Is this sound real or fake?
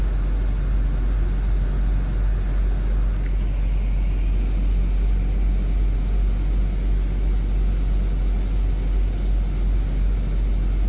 real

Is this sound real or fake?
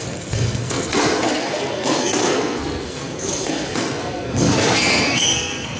fake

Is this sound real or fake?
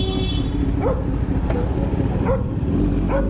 real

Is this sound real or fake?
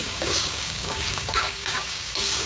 fake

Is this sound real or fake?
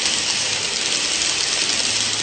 real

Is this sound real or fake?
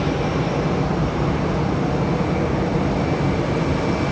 real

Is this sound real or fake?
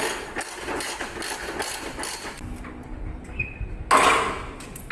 real